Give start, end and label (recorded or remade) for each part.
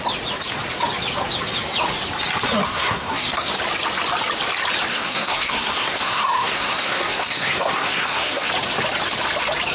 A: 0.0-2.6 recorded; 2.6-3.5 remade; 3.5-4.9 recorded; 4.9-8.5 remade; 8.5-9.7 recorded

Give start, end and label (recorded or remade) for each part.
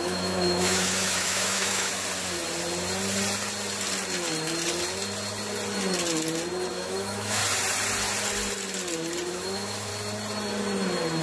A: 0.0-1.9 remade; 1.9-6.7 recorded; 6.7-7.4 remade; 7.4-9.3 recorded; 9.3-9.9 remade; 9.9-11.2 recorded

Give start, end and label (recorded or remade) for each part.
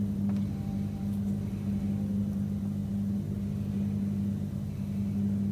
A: 0.0-5.5 recorded